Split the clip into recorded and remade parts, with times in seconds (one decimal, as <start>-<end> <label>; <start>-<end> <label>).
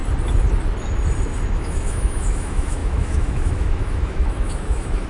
0.0-1.5 recorded; 1.5-5.1 remade